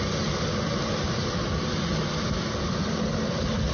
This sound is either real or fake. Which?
real